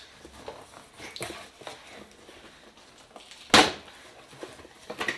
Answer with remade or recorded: recorded